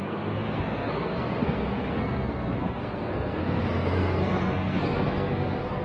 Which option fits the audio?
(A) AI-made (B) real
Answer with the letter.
A